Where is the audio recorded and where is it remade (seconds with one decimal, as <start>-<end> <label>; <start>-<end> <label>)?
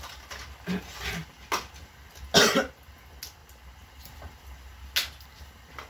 0.0-5.9 recorded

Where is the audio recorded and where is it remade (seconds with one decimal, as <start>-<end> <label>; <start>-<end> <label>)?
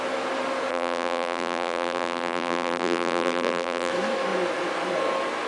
0.0-0.7 recorded; 0.7-3.9 remade; 3.9-5.5 recorded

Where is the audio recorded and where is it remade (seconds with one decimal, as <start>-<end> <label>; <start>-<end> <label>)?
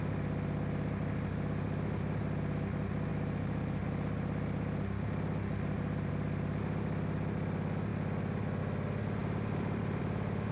0.0-10.5 recorded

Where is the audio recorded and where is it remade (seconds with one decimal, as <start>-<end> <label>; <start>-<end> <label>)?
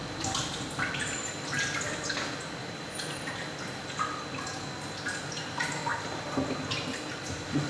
0.0-2.6 recorded; 2.6-3.3 remade; 3.3-7.7 recorded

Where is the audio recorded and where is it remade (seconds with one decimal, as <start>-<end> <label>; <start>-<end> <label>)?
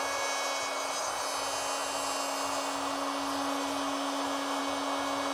0.0-5.3 recorded